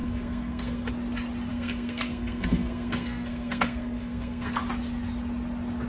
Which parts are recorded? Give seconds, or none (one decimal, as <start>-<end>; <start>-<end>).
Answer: 0.9-1.5; 4.6-5.9